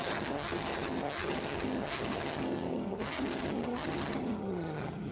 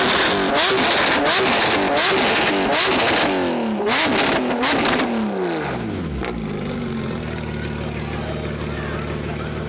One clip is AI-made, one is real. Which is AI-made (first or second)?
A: first